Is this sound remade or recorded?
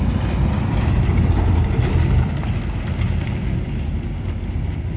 recorded